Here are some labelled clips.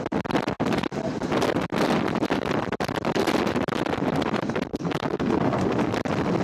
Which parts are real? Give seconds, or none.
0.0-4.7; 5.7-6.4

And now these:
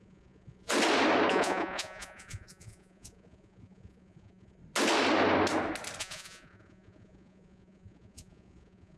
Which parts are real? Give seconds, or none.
0.7-1.3; 4.6-6.0

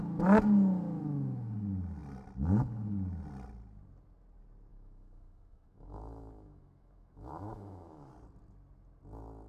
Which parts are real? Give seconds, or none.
0.0-4.7; 8.1-9.5

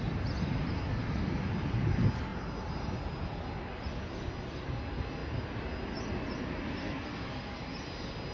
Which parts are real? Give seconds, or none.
0.0-6.8; 7.6-8.3

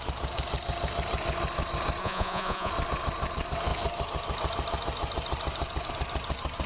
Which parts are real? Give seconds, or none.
0.0-2.0; 2.7-6.7

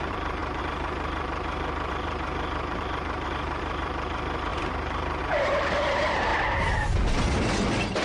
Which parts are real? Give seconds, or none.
6.3-8.0